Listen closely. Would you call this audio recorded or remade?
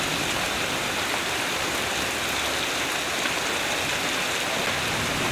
recorded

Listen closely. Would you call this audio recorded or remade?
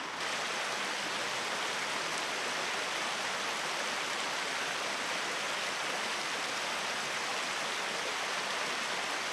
recorded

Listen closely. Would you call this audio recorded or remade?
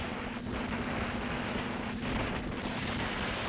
recorded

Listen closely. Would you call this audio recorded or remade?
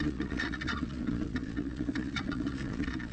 remade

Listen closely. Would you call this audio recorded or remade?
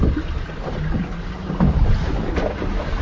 recorded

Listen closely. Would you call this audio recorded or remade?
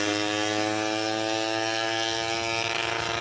recorded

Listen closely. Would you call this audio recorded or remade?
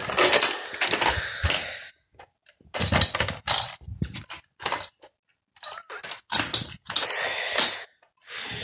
recorded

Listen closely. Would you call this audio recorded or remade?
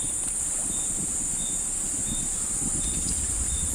recorded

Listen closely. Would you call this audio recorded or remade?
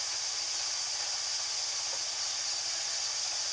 recorded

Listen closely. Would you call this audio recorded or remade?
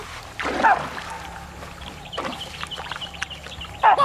recorded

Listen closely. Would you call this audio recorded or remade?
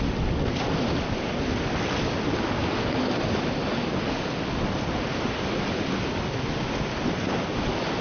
recorded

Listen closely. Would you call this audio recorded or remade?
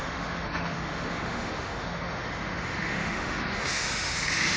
remade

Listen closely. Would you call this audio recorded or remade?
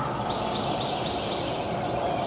recorded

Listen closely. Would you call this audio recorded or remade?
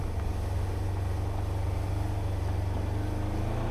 recorded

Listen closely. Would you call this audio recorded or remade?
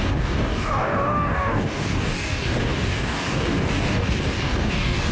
remade